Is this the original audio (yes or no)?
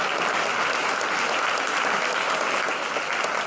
yes